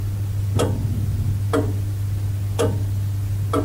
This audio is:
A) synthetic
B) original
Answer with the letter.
B